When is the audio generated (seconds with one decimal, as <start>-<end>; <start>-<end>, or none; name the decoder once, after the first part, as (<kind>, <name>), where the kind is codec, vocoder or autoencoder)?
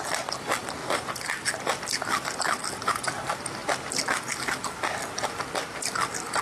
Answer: none